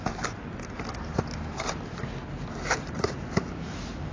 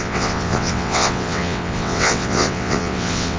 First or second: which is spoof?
second